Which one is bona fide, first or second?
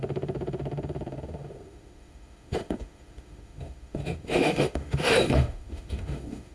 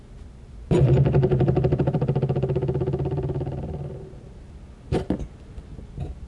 second